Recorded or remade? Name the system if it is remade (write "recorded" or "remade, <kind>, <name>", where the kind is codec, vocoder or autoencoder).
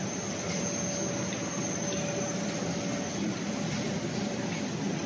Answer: recorded